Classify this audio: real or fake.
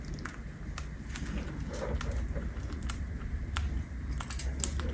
real